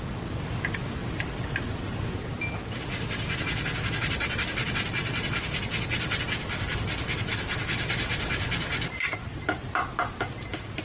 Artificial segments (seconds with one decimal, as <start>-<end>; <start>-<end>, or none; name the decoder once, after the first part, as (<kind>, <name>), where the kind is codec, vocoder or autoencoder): 1.0-2.7 (vocoder, BigVGAN v2); 8.7-9.8